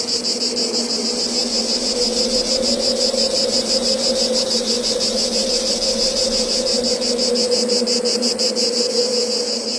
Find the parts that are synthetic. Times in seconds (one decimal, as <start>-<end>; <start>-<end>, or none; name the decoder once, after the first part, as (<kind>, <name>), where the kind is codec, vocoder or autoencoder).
none